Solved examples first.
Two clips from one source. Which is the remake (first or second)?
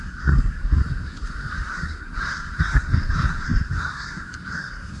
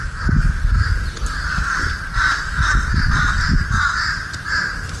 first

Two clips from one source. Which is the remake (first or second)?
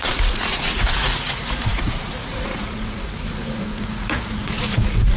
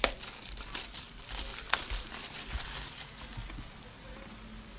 first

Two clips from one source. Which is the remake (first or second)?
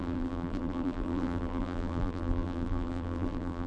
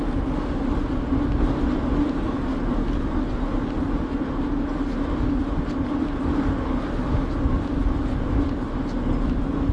first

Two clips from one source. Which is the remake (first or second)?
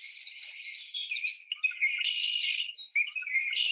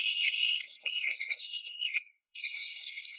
second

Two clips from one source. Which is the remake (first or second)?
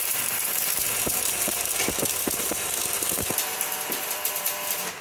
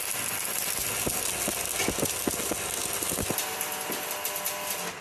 first